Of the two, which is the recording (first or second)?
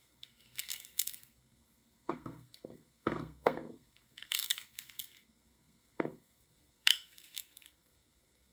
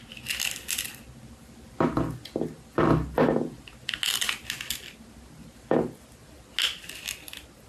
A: second